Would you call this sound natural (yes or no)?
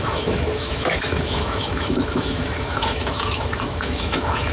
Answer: no